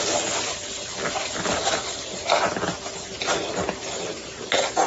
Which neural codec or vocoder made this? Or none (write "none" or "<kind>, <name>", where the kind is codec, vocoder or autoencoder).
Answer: none